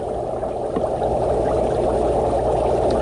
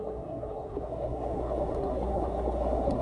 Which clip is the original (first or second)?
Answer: first